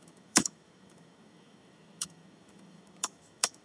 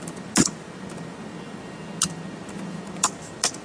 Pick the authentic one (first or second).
second